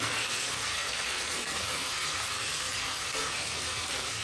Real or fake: fake